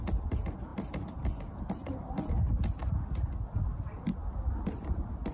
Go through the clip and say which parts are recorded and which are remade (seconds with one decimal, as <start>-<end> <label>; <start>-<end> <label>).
0.0-5.3 recorded